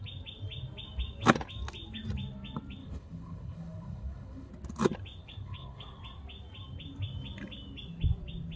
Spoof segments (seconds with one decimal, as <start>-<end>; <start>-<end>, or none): 2.8-4.5; 5.2-6.0

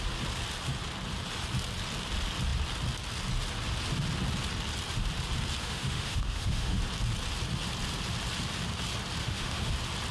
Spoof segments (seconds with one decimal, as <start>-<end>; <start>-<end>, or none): 5.6-6.8; 9.2-9.7